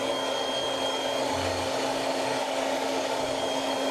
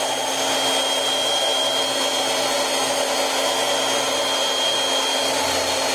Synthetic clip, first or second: first